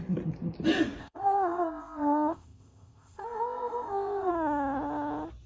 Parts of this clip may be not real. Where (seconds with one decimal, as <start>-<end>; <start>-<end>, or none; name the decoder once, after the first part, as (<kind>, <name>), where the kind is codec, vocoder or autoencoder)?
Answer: 1.0-4.3 (codec, ZipCodec)